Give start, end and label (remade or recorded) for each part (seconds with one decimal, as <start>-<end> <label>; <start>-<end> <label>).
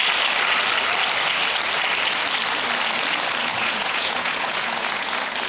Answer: 0.0-3.5 recorded; 3.5-5.1 remade; 5.1-5.5 recorded